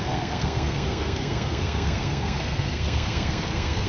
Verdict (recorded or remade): remade